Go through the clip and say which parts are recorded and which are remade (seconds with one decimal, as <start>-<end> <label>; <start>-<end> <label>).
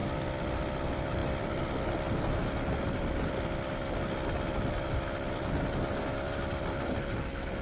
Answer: 0.0-7.6 recorded